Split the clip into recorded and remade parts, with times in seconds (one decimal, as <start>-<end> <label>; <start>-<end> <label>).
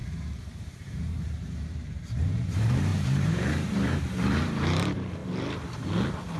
0.0-5.2 remade; 5.2-6.4 recorded